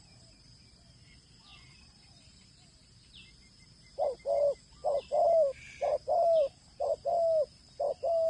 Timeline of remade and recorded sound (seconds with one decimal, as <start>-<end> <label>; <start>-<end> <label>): 0.0-4.8 remade; 4.8-5.7 recorded; 5.7-7.1 remade; 7.1-7.9 recorded; 7.9-8.3 remade